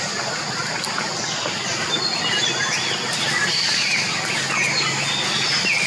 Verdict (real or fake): real